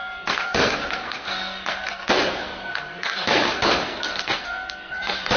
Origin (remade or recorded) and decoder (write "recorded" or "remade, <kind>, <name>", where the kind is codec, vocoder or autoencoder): remade, codec, SNAC